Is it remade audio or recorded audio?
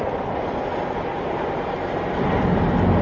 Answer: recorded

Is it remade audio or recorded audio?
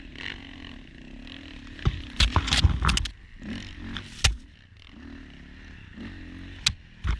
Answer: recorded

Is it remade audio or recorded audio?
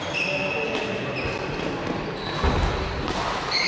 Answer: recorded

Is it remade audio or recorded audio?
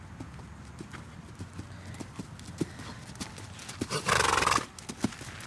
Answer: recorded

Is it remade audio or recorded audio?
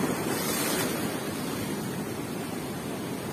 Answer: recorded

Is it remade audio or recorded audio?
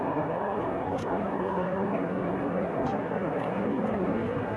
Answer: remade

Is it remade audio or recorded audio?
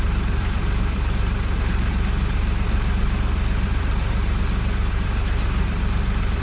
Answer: remade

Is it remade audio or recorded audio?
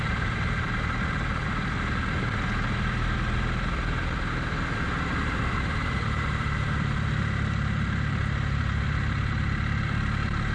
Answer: remade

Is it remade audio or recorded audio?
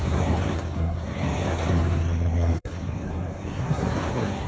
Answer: remade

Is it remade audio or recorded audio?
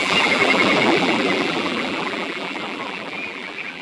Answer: remade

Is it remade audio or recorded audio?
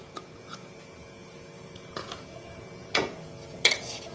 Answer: remade